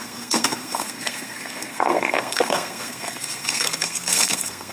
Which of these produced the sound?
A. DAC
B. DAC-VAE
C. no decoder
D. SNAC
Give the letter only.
D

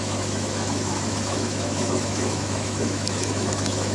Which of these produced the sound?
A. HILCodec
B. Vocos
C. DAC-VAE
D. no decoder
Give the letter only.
C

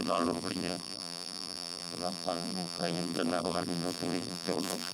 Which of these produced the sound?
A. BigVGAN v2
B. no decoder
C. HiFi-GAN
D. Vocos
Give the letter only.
A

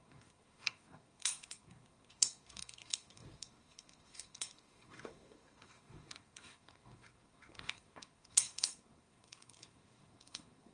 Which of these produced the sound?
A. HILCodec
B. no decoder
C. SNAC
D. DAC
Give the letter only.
C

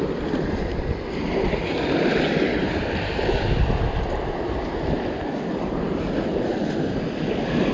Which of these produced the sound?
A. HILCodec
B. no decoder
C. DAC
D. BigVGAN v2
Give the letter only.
B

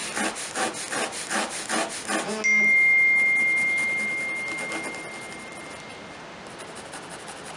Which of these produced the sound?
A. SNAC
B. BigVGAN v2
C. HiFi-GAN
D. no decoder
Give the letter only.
D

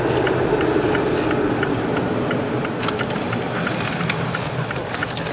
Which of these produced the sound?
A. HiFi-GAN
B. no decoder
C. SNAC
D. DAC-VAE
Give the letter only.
B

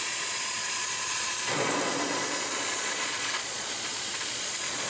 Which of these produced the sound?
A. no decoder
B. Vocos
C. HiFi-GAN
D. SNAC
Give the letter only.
B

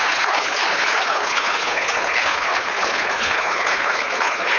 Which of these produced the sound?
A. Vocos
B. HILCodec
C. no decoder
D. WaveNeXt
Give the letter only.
B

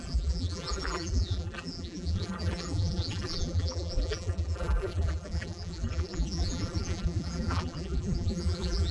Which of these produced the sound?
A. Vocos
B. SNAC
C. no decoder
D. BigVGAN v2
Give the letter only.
D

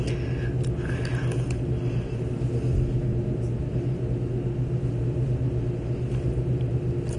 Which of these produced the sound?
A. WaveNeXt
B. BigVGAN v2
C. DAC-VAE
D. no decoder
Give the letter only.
D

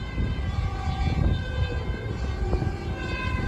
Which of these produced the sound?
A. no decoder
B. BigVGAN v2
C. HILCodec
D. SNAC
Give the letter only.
A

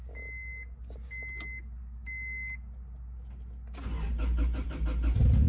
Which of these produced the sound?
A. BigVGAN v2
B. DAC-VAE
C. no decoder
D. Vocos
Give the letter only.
C